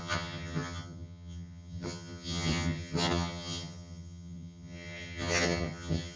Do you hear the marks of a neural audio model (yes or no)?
yes